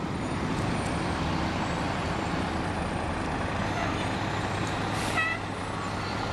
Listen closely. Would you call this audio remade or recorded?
recorded